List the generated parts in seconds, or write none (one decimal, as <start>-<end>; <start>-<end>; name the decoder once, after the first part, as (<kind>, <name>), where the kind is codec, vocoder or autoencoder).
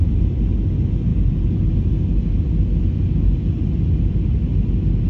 none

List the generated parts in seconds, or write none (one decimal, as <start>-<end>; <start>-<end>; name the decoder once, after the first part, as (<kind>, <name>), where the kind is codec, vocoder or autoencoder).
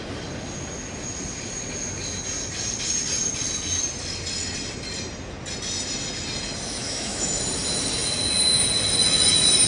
6.8-7.4 (autoencoder, DAC-VAE)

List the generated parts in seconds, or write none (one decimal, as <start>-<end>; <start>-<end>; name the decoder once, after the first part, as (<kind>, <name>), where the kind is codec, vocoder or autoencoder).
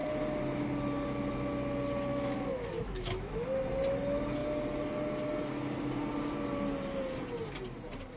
2.1-3.4 (autoencoder, DAC-VAE)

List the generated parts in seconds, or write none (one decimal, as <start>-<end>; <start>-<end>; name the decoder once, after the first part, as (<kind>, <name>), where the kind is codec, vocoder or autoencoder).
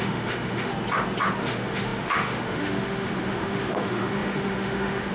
0.0-0.7 (autoencoder, DAC-VAE); 1.4-5.1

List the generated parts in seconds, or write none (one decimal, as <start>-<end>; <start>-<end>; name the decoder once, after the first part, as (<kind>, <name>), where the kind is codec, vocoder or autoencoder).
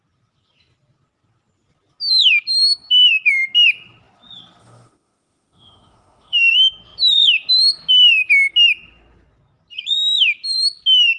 4.6-6.5 (autoencoder, DAC-VAE)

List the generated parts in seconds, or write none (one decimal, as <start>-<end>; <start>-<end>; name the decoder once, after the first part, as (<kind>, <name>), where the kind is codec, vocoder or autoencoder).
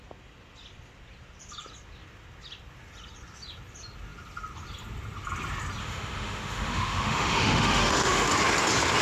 5.8-8.3 (autoencoder, DAC-VAE)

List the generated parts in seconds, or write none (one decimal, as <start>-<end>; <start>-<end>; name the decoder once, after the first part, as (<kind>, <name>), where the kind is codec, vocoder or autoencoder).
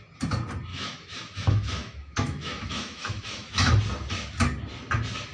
0.7-3.7 (autoencoder, DAC-VAE)